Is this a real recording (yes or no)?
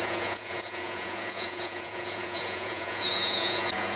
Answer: no